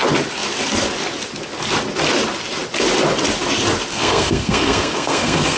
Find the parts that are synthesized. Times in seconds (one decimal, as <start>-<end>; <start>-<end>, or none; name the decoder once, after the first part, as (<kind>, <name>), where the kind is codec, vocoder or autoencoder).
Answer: 3.9-5.6 (codec, SNAC)